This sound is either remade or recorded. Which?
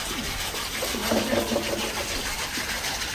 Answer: recorded